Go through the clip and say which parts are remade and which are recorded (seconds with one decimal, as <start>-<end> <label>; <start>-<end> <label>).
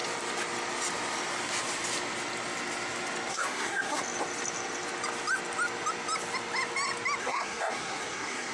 0.0-3.3 recorded; 3.3-4.0 remade; 4.0-7.2 recorded; 7.2-8.5 remade